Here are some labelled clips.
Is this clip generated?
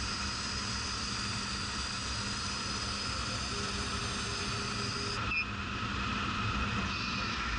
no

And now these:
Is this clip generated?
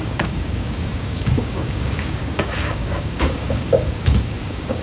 yes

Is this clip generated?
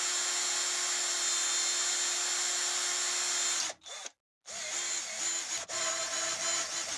no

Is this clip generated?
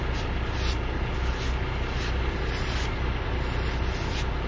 no